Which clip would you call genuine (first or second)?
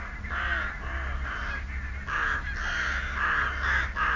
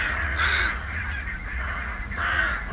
first